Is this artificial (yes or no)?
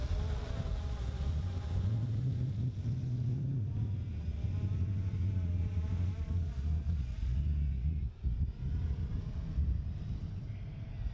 no